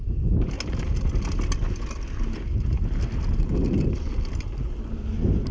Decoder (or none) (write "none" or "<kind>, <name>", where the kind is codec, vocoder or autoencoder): none